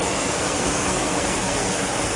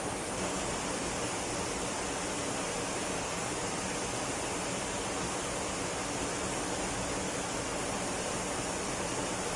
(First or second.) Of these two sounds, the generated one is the first